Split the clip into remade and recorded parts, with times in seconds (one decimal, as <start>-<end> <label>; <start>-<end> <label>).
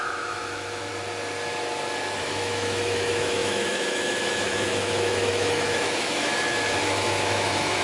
0.0-0.9 remade; 0.9-2.2 recorded; 2.2-7.8 remade